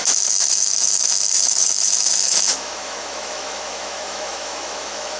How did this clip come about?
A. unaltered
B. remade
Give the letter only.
B